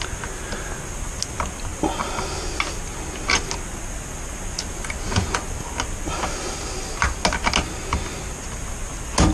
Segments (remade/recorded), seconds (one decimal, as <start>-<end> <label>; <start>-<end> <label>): 0.0-9.3 recorded